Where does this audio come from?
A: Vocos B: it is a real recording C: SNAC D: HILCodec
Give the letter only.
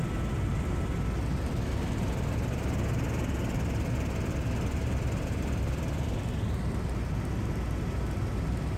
B